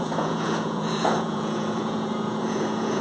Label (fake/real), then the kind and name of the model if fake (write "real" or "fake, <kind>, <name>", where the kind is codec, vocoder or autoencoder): fake, vocoder, Vocos